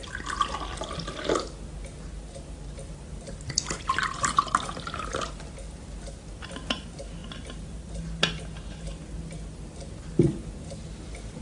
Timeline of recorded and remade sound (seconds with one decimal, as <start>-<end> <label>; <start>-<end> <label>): 0.0-11.4 recorded